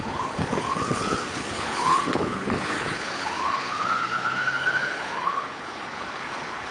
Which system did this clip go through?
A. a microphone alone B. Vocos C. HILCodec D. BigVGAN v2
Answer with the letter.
C